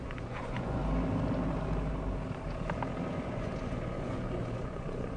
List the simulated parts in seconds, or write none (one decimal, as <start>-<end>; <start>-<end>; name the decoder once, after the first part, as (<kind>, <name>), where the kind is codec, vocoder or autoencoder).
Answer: 0.0-0.8 (vocoder, Vocos); 3.1-5.2